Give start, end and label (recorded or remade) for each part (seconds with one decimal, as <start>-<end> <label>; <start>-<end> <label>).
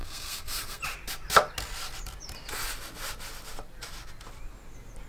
0.0-0.8 remade; 0.8-5.1 recorded